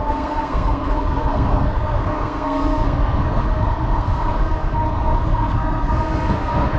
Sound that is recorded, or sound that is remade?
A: remade